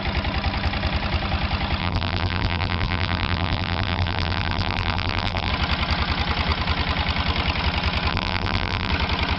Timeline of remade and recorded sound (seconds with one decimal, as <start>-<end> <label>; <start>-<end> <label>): 0.0-1.8 recorded; 1.8-5.5 remade; 5.5-8.1 recorded; 8.1-8.9 remade; 8.9-9.4 recorded